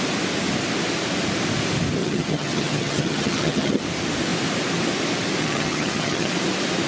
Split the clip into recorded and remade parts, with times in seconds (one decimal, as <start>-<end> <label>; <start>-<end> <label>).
0.0-2.0 recorded; 2.0-3.8 remade; 3.8-5.4 recorded; 5.4-6.3 remade; 6.3-6.9 recorded